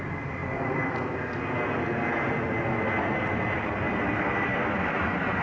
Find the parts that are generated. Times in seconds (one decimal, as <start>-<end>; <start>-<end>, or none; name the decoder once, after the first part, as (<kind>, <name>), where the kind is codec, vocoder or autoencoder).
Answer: 0.0-0.4 (vocoder, BigVGAN v2); 3.2-5.4